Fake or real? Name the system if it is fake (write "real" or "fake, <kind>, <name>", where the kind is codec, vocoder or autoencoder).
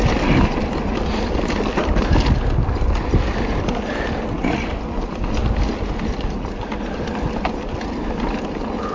real